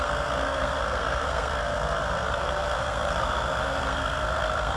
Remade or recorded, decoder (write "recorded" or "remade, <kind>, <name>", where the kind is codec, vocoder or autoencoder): remade, codec, SNAC